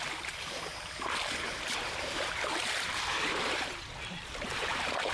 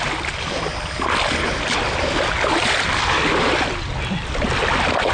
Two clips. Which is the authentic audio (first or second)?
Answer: second